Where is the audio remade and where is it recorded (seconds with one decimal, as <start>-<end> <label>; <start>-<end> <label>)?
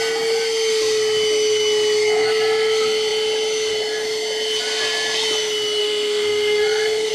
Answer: 0.0-5.8 recorded; 5.8-7.1 remade